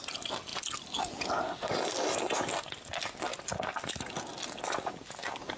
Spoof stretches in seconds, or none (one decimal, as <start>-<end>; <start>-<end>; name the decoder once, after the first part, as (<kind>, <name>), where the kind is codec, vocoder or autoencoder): none